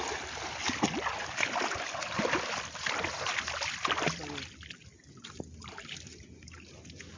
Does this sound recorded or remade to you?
recorded